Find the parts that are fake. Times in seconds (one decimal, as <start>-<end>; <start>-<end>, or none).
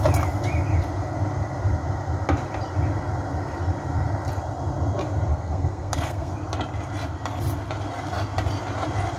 5.3-6.3